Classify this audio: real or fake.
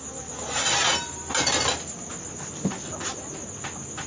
real